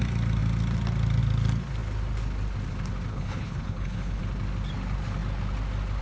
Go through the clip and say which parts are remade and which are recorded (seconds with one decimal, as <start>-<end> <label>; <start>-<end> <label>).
0.0-3.1 recorded; 3.1-4.2 remade; 4.2-6.0 recorded